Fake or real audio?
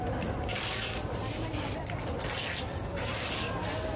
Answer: real